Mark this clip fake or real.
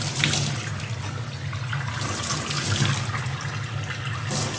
real